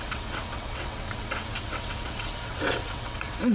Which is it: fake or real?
fake